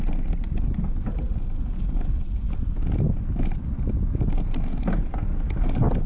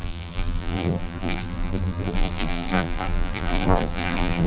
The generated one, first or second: second